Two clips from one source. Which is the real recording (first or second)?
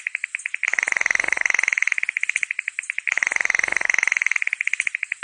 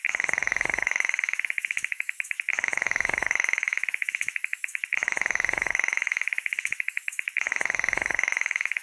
first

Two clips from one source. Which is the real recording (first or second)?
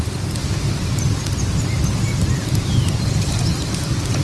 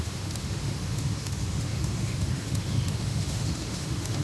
first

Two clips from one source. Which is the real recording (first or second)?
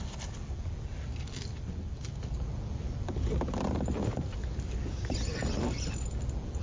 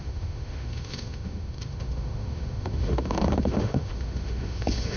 first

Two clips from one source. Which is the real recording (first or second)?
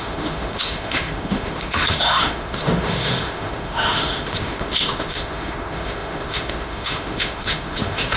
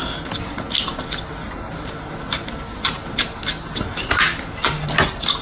second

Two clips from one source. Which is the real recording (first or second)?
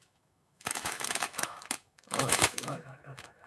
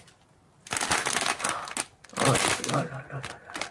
second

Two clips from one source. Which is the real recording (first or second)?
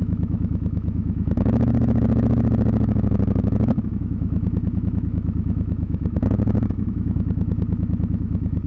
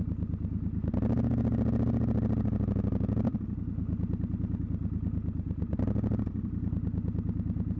second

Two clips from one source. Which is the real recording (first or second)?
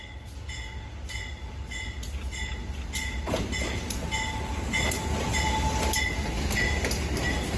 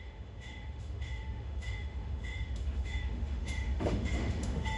first